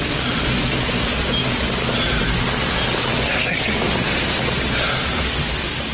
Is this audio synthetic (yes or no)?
no